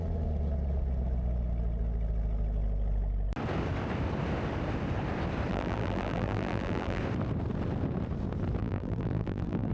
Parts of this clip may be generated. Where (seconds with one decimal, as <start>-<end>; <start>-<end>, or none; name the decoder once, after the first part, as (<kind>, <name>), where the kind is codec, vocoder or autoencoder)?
5.5-7.0 (vocoder, BigVGAN v2); 8.6-9.7